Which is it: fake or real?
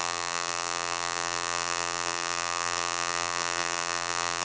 fake